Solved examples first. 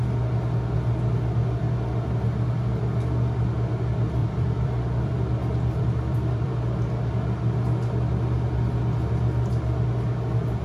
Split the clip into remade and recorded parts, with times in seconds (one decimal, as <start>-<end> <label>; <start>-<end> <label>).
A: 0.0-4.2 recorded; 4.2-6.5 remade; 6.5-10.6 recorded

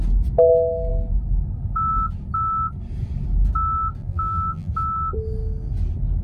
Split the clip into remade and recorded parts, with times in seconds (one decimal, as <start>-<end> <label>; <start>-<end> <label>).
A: 0.0-4.0 recorded; 4.0-4.7 remade; 4.7-6.2 recorded

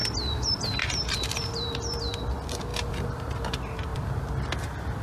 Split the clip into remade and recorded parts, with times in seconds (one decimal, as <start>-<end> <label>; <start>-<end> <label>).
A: 0.0-2.0 remade; 2.0-2.7 recorded; 2.7-3.4 remade; 3.4-3.9 recorded; 3.9-4.6 remade; 4.6-5.0 recorded

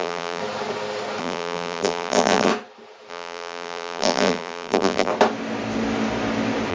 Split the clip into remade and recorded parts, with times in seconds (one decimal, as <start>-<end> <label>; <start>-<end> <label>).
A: 0.0-0.4 remade; 0.4-1.2 recorded; 1.2-2.5 remade; 2.5-3.1 recorded; 3.1-5.1 remade; 5.1-6.7 recorded